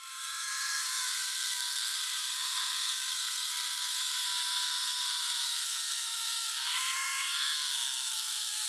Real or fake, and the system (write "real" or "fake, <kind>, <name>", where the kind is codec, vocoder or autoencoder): fake, codec, SNAC